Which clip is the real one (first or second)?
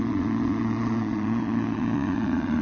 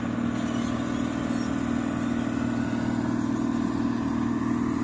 second